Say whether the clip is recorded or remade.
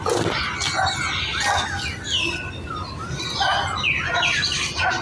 recorded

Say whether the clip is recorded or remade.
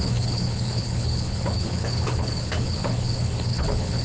remade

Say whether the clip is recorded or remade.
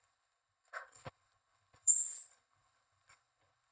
remade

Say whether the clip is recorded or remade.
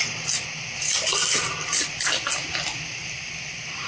recorded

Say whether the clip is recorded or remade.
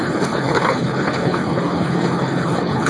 remade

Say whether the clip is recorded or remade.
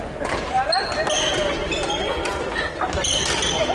recorded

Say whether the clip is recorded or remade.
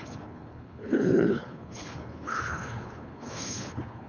remade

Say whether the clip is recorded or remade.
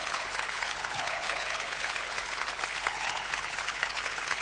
remade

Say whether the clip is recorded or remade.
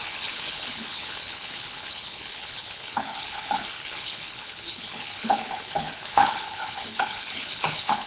remade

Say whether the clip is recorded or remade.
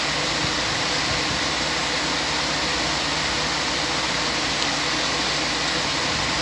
recorded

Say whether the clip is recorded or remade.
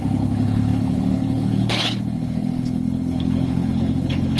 remade